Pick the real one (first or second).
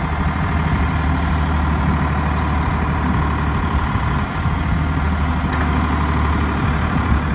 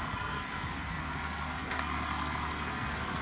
first